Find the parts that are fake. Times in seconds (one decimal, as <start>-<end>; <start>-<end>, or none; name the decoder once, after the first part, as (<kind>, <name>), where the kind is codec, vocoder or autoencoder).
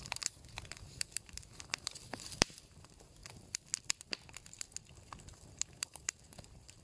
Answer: 0.0-3.2 (vocoder, BigVGAN v2); 5.3-6.8